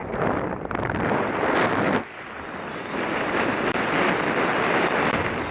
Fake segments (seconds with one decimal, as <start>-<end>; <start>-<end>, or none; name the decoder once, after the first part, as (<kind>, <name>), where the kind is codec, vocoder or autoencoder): none